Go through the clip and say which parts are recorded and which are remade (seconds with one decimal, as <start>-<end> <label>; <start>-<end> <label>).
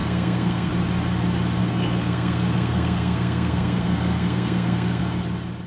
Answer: 0.0-0.7 remade; 0.7-1.6 recorded; 1.6-5.0 remade; 5.0-5.7 recorded